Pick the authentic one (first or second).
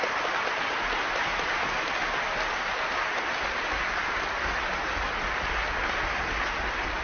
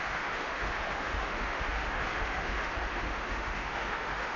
first